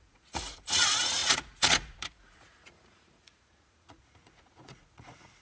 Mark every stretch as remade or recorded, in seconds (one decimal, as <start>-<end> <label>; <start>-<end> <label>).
0.0-5.4 remade